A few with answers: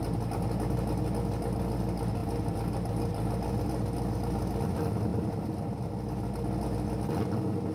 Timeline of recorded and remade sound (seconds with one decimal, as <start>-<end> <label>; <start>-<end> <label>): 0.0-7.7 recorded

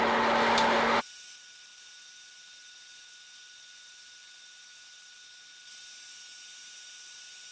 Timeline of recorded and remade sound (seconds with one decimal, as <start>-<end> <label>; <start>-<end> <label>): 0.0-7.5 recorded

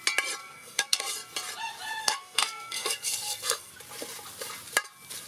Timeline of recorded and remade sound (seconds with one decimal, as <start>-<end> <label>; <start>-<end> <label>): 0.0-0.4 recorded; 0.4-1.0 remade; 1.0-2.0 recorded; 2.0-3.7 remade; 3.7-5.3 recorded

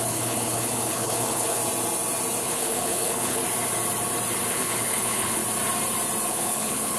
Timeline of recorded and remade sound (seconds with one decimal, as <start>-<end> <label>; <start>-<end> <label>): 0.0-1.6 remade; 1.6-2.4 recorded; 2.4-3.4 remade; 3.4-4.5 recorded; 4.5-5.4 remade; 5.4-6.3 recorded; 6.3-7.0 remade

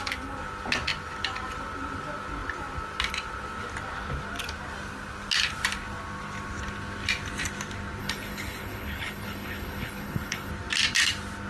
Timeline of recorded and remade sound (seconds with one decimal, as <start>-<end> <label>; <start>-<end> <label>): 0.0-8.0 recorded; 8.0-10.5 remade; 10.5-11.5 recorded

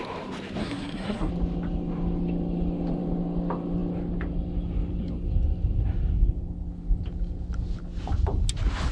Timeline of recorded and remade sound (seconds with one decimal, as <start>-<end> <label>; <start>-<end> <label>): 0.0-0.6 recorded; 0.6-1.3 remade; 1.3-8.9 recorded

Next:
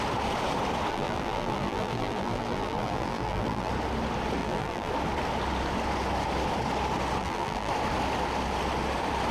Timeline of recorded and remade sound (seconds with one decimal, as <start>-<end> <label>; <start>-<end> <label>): 0.0-0.9 recorded; 0.9-3.7 remade; 3.7-4.4 recorded; 4.4-4.9 remade; 4.9-7.2 recorded; 7.2-7.7 remade; 7.7-9.3 recorded

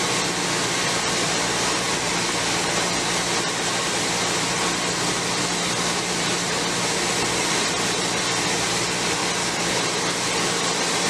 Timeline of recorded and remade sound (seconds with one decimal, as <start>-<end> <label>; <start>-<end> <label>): 0.0-11.1 recorded